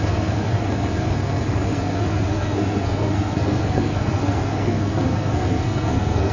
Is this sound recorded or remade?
remade